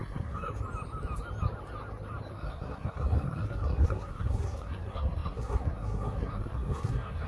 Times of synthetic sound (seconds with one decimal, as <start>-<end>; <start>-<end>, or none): 0.0-0.5; 2.3-7.3